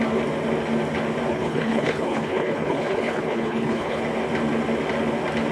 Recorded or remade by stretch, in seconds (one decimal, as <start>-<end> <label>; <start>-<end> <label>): 0.0-1.3 recorded; 1.3-4.0 remade; 4.0-5.5 recorded